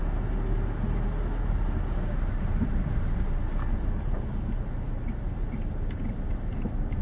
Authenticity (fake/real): real